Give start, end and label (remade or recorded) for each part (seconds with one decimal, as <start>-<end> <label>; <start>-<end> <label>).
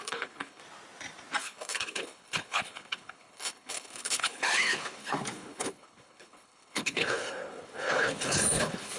0.0-0.6 remade; 0.6-1.4 recorded; 1.4-9.0 remade